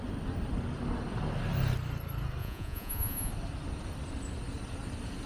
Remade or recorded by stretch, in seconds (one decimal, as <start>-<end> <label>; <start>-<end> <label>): 0.0-2.4 recorded; 2.4-3.3 remade; 3.3-5.3 recorded